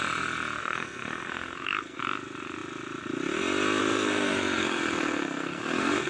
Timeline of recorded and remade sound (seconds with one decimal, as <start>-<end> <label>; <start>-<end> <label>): 0.0-0.6 recorded; 0.6-2.0 remade; 2.0-3.8 recorded; 3.8-6.1 remade